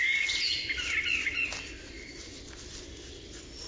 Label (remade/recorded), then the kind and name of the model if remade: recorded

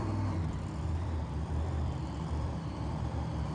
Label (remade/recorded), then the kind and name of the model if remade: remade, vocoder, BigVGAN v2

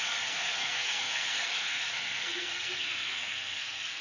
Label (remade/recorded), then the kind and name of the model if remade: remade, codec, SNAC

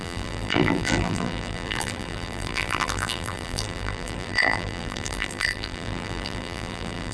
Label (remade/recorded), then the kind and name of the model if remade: remade, vocoder, BigVGAN v2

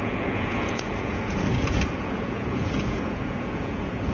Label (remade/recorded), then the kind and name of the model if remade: remade, vocoder, Vocos